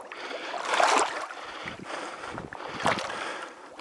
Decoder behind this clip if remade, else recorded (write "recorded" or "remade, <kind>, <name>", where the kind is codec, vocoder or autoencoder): remade, vocoder, BigVGAN v2